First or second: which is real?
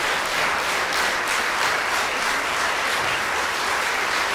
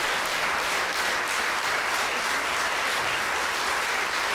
second